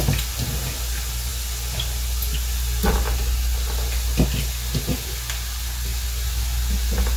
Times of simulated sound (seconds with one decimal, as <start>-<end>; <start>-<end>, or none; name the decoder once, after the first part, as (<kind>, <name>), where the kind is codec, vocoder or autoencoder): none